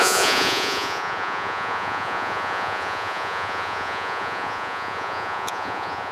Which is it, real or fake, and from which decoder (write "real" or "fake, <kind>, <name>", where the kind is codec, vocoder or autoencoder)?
fake, vocoder, Vocos